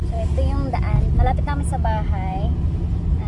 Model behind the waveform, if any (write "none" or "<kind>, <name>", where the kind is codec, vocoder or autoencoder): none